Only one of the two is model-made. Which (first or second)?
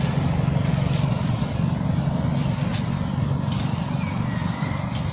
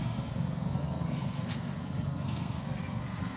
second